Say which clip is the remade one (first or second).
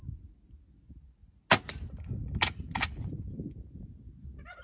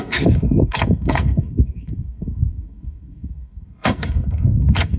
second